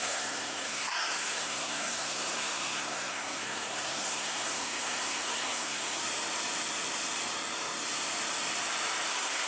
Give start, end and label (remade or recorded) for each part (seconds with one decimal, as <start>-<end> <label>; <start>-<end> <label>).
0.0-6.0 remade; 6.0-9.1 recorded; 9.1-9.5 remade